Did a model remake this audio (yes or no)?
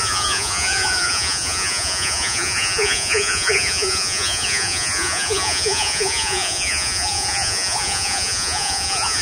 yes